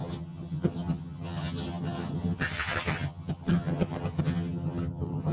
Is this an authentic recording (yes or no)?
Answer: no